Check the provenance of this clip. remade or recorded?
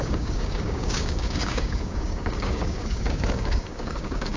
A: remade